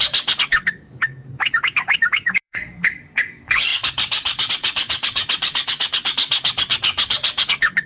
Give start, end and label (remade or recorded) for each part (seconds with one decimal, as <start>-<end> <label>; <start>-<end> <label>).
0.0-7.9 remade